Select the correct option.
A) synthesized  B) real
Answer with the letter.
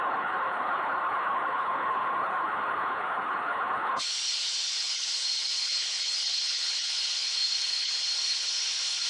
A